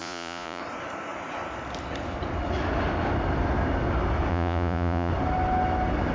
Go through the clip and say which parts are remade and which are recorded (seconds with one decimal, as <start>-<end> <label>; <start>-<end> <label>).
0.0-0.6 remade; 0.6-4.3 recorded; 4.3-5.1 remade; 5.1-6.1 recorded